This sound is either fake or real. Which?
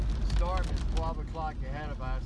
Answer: real